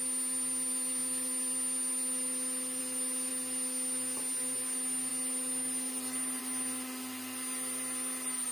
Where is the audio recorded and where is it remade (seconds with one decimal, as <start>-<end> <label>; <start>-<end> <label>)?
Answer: 0.0-8.5 recorded